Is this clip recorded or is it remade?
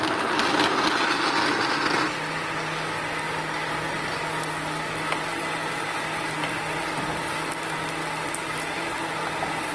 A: recorded